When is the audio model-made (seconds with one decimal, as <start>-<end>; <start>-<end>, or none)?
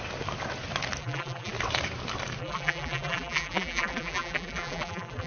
1.0-1.5; 2.4-5.3